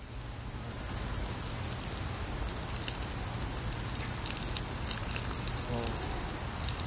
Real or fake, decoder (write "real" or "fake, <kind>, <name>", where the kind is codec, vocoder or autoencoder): real